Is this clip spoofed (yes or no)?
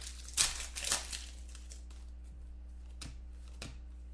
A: no